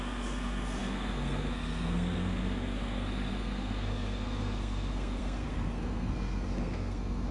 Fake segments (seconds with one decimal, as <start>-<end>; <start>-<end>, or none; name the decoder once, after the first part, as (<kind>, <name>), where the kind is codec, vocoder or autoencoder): 0.0-7.3 (codec, SNAC)